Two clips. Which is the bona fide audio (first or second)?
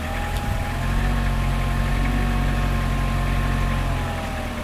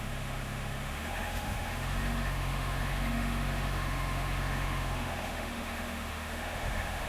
first